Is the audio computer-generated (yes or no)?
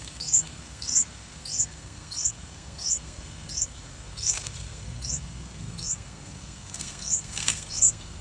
yes